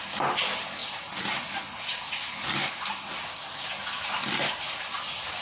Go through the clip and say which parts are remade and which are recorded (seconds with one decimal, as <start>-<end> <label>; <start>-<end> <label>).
0.0-5.4 recorded